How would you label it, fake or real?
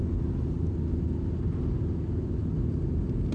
real